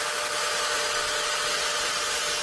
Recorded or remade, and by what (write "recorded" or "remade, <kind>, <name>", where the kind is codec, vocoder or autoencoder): recorded